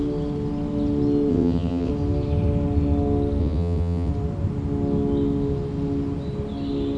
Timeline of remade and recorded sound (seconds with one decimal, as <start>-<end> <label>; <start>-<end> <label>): 0.0-1.3 recorded; 1.3-1.9 remade; 1.9-3.4 recorded; 3.4-4.1 remade; 4.1-7.0 recorded